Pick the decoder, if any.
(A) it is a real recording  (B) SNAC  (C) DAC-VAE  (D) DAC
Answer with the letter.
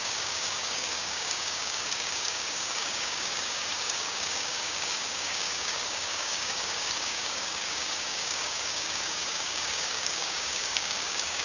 D